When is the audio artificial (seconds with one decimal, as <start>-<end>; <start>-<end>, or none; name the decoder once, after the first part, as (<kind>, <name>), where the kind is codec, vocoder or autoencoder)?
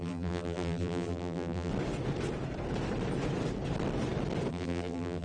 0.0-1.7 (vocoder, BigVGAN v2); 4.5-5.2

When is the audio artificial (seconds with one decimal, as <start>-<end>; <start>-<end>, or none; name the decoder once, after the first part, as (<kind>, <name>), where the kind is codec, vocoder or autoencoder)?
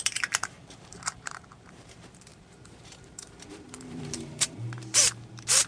0.0-5.7 (vocoder, BigVGAN v2)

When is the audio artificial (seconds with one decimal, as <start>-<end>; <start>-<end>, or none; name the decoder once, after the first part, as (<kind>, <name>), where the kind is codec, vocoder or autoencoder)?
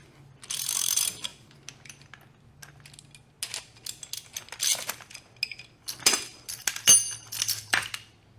none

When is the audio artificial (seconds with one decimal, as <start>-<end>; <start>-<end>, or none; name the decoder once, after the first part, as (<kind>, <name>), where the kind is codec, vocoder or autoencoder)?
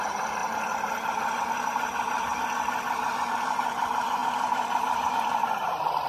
0.0-2.3 (vocoder, BigVGAN v2); 2.8-6.1